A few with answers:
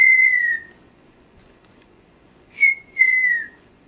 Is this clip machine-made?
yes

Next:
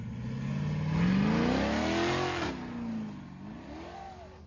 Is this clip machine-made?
no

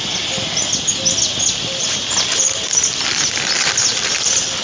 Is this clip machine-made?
no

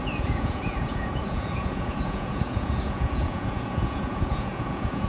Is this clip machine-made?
yes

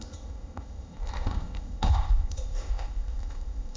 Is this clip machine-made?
yes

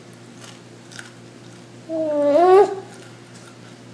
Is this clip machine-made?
no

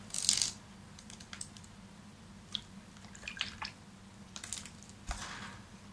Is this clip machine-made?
no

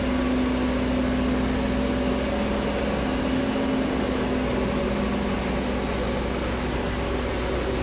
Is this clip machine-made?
no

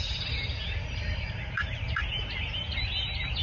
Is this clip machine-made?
no